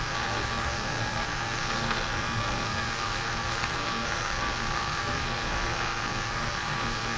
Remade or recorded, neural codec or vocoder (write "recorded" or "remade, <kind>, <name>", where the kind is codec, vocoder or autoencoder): remade, codec, SNAC